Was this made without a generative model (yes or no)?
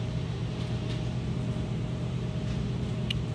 no